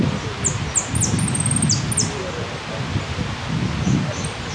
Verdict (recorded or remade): recorded